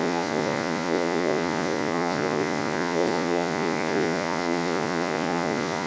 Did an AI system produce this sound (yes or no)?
yes